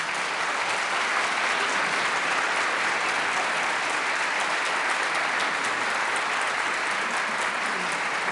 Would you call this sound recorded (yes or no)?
yes